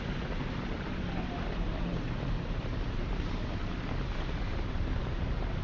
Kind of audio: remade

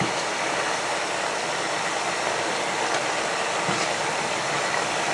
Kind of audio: recorded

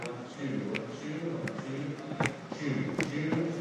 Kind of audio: recorded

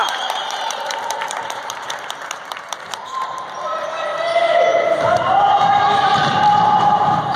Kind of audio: remade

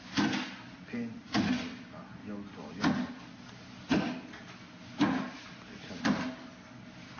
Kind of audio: recorded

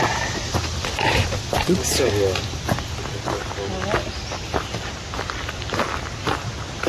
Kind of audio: recorded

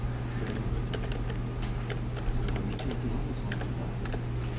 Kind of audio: recorded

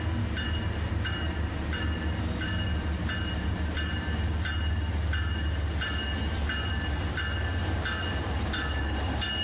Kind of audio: recorded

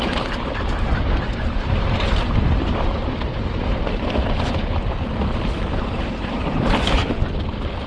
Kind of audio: remade